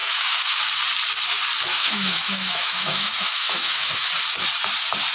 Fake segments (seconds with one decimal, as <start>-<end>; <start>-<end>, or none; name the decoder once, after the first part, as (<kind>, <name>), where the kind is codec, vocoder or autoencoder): 0.0-0.6 (autoencoder, DAC-VAE); 1.7-4.1